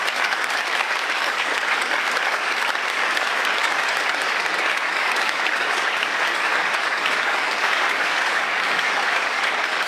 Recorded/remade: remade